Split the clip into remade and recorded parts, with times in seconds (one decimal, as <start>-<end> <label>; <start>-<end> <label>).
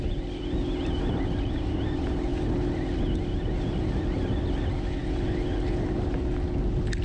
0.0-7.0 recorded